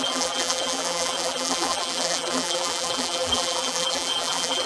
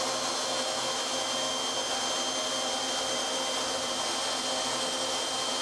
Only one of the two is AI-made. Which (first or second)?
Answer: first